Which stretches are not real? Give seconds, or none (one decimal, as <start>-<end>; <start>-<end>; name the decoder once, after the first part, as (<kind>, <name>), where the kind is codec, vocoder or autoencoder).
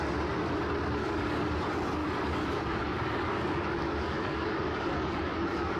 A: 1.0-1.5 (codec, DAC); 2.0-5.8